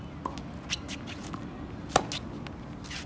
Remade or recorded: recorded